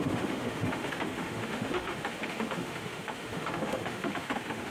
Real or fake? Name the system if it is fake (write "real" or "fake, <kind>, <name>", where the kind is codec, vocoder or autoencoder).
fake, autoencoder, DAC-VAE